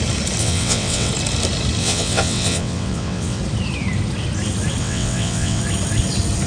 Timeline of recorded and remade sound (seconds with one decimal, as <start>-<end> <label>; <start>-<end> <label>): 0.0-0.4 recorded; 0.4-1.1 remade; 1.1-1.8 recorded; 1.8-3.4 remade; 3.4-4.8 recorded; 4.8-5.6 remade; 5.6-6.5 recorded